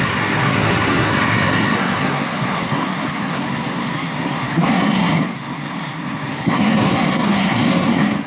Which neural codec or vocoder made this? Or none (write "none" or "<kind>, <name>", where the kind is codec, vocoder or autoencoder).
codec, SNAC